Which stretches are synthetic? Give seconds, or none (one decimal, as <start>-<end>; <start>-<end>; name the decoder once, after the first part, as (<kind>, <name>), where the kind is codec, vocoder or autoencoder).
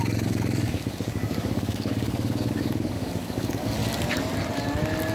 0.0-3.8 (codec, DAC)